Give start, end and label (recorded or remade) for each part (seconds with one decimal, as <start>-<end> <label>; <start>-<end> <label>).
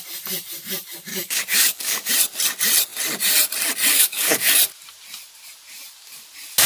0.0-1.1 recorded; 1.1-2.1 remade; 2.1-3.9 recorded; 3.9-4.5 remade; 4.5-6.7 recorded